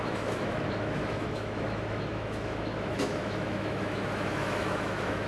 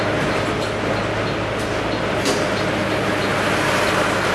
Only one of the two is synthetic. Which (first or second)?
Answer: first